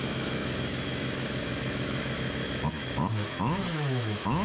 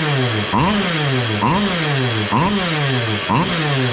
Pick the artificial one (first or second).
first